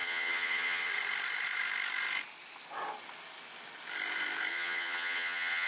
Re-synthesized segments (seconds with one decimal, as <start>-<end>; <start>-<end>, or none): 0.0-0.9; 4.5-5.7

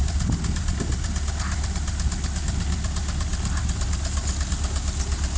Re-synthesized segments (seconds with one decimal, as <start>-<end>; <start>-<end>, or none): none